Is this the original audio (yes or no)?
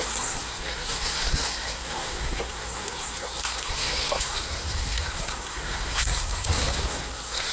no